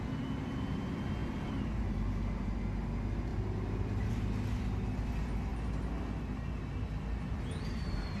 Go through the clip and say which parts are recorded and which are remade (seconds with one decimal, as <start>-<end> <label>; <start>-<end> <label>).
0.0-8.2 recorded